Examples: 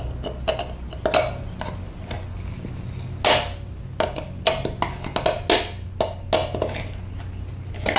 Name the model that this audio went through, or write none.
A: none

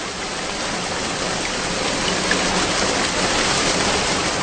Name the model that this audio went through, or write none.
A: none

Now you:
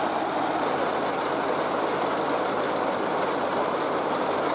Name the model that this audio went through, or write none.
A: none